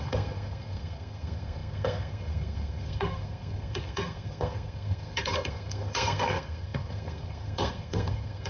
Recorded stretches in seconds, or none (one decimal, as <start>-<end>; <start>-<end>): none